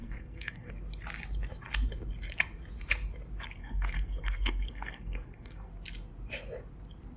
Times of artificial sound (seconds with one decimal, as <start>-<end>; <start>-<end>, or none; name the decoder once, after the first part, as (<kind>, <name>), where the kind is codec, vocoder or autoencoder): 0.0-0.7 (codec, SNAC); 3.6-5.7